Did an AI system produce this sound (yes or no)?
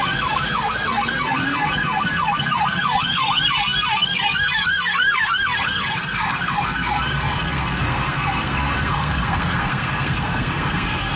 yes